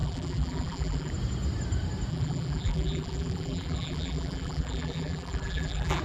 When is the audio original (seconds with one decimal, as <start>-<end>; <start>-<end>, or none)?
1.1-2.1